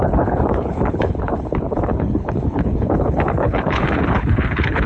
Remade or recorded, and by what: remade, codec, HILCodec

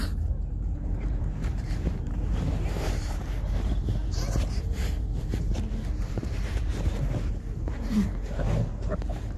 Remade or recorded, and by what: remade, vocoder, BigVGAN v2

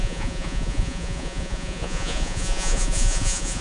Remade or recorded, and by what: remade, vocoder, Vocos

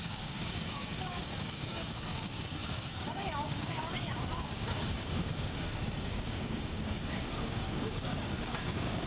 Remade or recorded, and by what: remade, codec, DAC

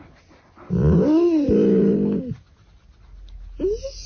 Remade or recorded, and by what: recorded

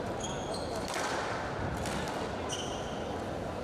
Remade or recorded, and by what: recorded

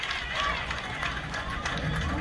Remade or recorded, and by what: remade, vocoder, Vocos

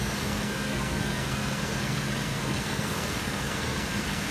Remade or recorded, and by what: remade, codec, SNAC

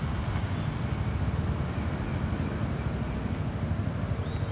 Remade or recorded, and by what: recorded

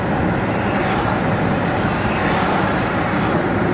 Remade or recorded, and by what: recorded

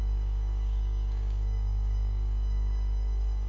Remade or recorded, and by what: remade, codec, DAC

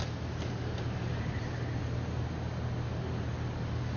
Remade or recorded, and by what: recorded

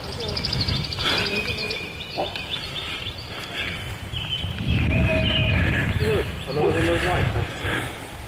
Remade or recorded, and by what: recorded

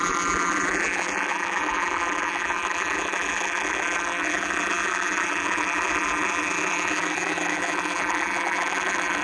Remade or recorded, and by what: remade, vocoder, BigVGAN v2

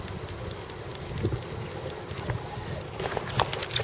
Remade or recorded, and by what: recorded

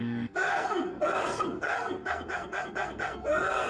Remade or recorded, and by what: remade, codec, SNAC